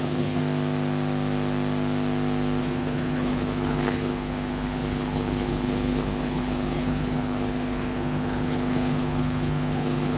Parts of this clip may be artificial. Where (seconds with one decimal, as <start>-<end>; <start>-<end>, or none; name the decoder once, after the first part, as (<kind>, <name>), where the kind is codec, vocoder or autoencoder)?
0.0-0.4 (codec, HILCodec); 2.6-10.2